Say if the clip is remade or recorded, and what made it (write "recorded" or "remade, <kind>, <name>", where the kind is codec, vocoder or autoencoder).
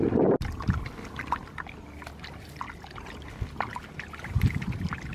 recorded